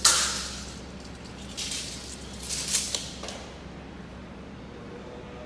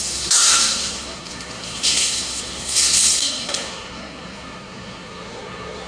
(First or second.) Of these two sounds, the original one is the first